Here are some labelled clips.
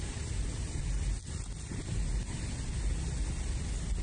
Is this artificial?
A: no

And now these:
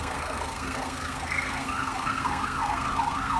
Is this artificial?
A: yes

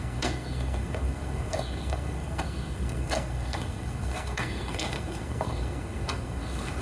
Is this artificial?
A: yes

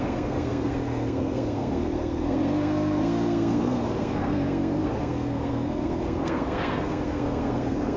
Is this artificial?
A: yes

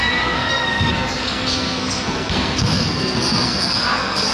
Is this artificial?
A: yes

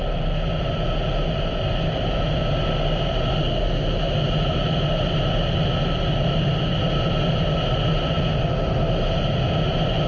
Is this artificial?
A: no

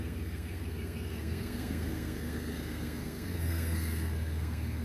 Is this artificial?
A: yes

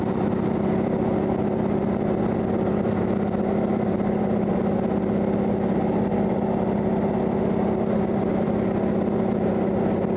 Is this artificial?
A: no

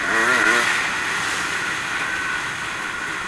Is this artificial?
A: no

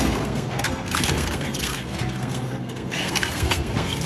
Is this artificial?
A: yes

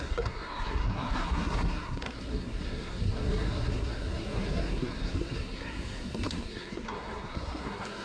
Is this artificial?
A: yes